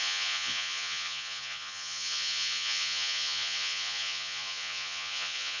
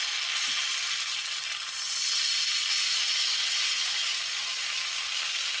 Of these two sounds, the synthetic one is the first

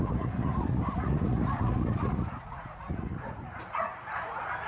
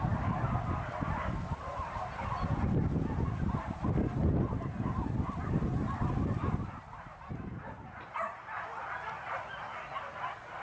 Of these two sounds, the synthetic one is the first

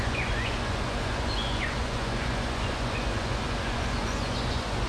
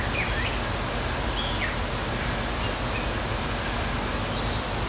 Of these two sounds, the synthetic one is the first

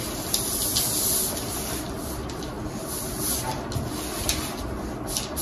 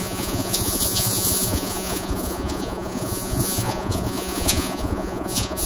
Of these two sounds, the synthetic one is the second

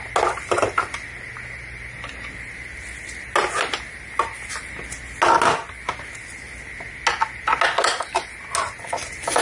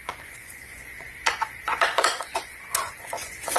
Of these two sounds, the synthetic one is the second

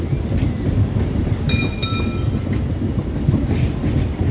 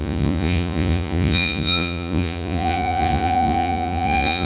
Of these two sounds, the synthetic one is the second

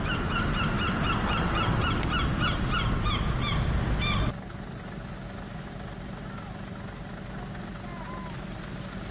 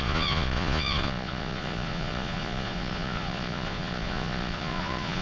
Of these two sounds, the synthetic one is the second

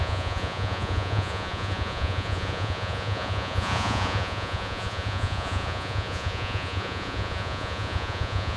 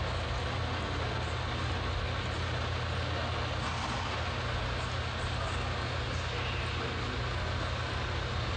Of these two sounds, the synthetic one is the first